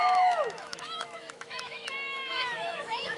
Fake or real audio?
fake